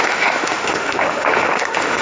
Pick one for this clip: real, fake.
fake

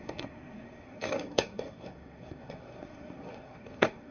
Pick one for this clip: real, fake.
fake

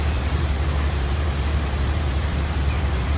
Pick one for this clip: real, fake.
fake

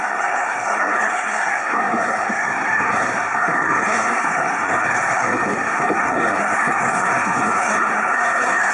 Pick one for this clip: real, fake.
fake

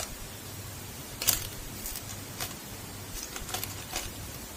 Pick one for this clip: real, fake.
fake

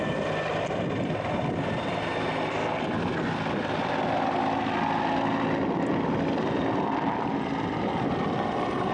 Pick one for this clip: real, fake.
real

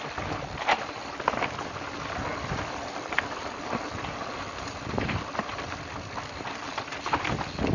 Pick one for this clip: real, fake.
real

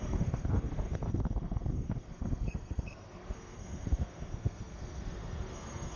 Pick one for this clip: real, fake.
fake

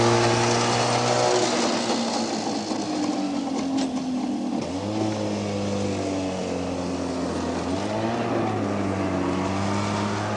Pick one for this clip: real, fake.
real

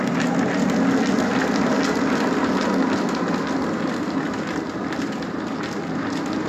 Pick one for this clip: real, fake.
real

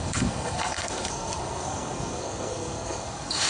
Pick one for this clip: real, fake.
fake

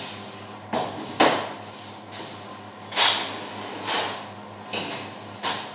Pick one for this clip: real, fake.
real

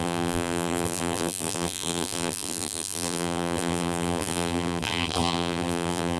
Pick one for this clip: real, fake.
fake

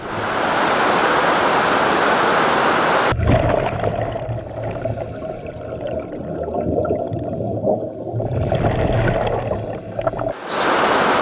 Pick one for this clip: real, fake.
real